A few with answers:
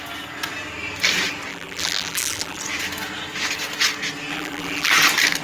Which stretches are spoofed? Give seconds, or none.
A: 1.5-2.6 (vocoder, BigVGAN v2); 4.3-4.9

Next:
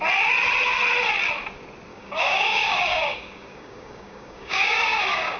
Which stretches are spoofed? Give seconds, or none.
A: 1.9-5.4 (codec, DAC)

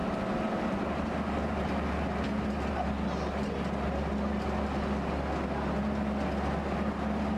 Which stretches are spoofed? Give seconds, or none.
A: none